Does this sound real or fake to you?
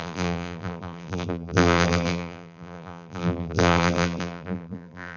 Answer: fake